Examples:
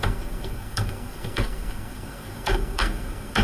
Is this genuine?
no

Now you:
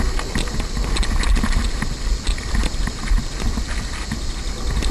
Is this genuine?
yes